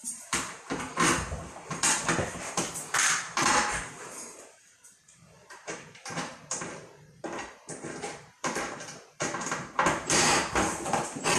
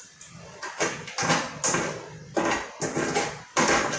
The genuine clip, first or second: second